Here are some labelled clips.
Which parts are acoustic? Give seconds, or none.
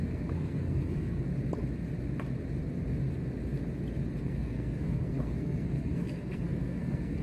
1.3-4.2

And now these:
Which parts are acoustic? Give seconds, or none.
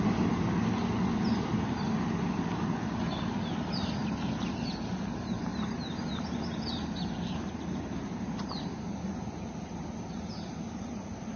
0.0-11.4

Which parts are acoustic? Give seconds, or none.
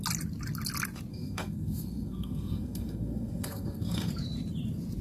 0.0-1.1; 4.1-5.0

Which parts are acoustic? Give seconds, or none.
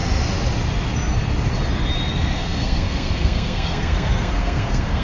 0.0-2.1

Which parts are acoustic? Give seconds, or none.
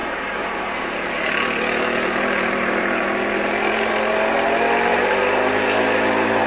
3.9-6.5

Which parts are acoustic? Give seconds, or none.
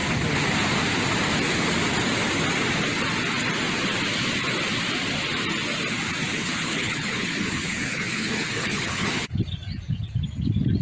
0.0-6.3; 9.4-10.8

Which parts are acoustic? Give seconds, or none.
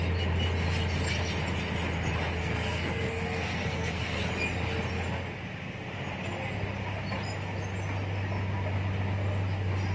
0.0-2.4; 4.2-9.9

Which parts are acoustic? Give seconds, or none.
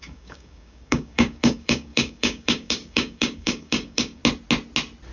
4.2-5.1